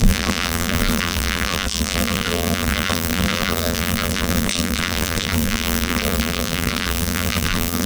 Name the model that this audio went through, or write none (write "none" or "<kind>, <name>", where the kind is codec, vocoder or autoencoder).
vocoder, BigVGAN v2